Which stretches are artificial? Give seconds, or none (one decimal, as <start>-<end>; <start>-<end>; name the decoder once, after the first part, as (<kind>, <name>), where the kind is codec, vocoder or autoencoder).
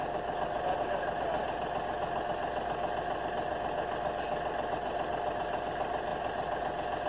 none